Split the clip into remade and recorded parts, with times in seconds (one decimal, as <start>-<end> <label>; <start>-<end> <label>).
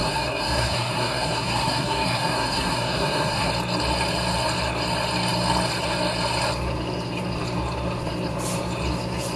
0.0-3.5 remade; 3.5-9.4 recorded